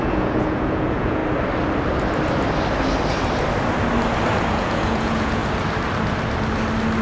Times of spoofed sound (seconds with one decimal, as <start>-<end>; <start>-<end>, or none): 0.0-1.2; 4.5-5.4